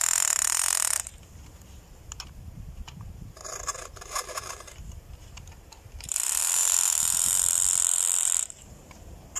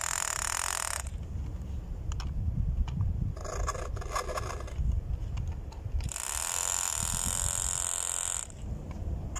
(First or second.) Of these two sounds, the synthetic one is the first